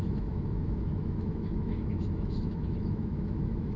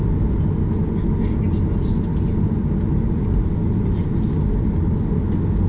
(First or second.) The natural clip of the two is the second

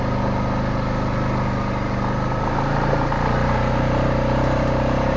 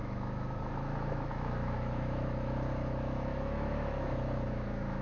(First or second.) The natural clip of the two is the first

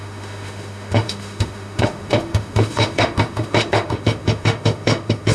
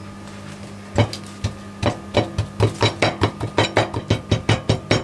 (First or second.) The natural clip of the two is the second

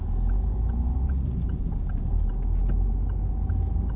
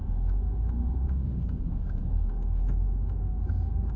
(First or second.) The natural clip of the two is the first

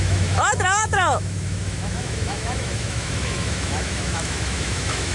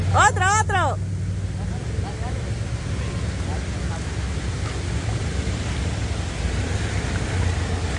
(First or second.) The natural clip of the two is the second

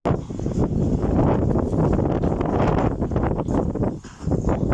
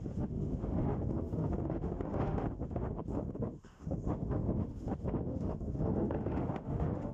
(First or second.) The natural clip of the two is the first